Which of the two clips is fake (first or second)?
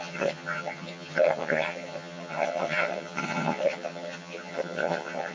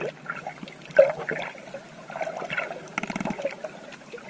first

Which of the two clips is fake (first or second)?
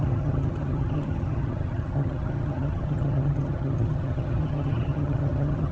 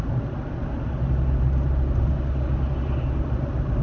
first